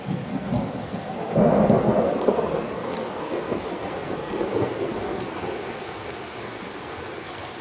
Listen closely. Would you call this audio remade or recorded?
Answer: remade